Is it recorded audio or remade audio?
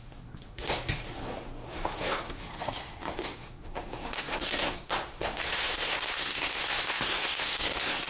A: remade